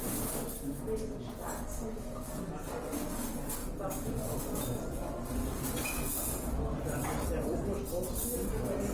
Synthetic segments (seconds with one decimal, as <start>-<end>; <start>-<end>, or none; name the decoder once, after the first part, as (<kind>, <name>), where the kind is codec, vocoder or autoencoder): 3.3-7.8 (vocoder, BigVGAN v2)